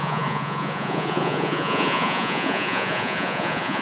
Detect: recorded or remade remade